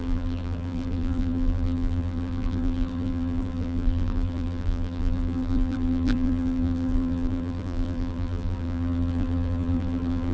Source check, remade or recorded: remade